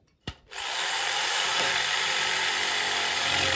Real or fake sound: fake